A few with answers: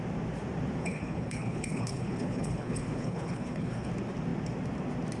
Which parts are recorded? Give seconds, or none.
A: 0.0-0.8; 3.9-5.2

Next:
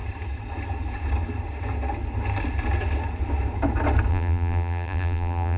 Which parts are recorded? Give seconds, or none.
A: 0.0-4.1

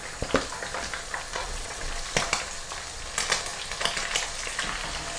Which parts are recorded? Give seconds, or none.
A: 0.0-1.4; 1.9-5.2

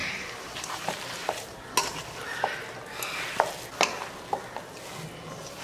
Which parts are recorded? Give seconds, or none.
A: 1.7-5.6